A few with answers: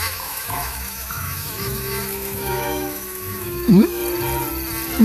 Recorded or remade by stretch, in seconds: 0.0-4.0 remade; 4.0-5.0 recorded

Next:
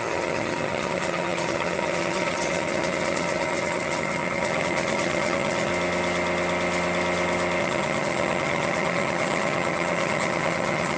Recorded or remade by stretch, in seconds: 0.0-5.7 remade; 5.7-7.6 recorded; 7.6-11.0 remade

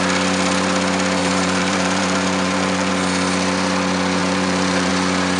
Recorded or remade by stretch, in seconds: 0.0-1.2 recorded; 1.2-2.9 remade; 2.9-4.2 recorded; 4.2-4.9 remade; 4.9-5.4 recorded

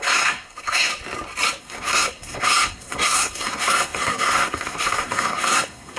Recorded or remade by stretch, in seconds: 0.0-0.9 remade; 0.9-1.6 recorded; 1.6-6.0 remade

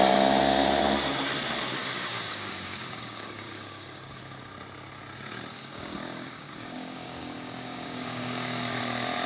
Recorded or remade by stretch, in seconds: 0.0-1.8 recorded; 1.8-4.2 remade; 4.2-5.5 recorded; 5.5-8.8 remade; 8.8-9.3 recorded

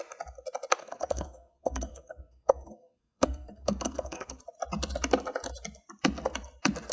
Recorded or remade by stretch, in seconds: 0.0-0.8 recorded; 0.8-4.4 remade; 4.4-6.9 recorded